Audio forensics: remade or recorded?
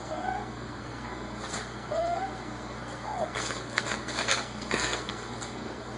remade